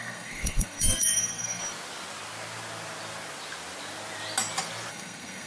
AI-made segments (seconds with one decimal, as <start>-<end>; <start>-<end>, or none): 0.0-1.6; 4.9-5.5

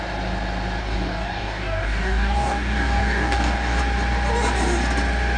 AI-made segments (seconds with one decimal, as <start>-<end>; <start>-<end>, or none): 0.8-3.8

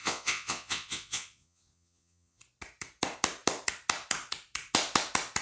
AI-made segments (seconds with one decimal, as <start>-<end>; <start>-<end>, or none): 0.0-2.4

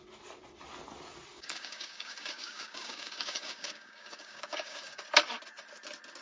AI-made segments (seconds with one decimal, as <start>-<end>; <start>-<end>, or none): 1.3-5.0